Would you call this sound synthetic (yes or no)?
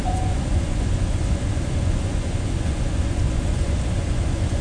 yes